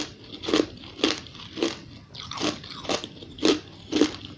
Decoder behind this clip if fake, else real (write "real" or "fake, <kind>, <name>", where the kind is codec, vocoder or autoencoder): real